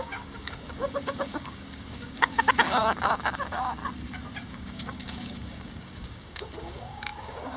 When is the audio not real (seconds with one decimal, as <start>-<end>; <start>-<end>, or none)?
0.0-3.8; 4.5-7.6